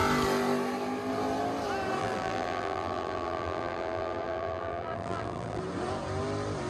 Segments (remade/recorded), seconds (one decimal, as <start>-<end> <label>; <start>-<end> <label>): 0.0-2.0 recorded; 2.0-5.6 remade; 5.6-6.7 recorded